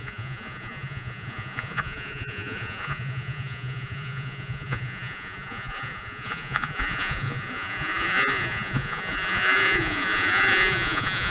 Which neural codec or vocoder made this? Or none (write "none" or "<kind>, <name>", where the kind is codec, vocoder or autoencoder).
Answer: vocoder, Vocos